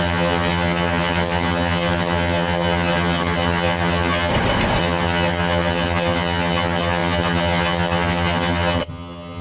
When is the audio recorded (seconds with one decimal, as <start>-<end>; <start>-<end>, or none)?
4.3-4.8